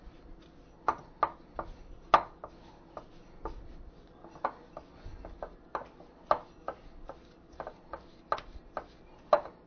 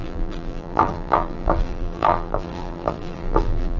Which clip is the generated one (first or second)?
second